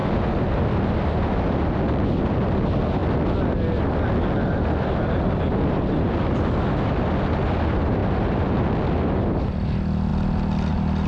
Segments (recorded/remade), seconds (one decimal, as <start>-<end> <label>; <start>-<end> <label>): 0.0-11.1 recorded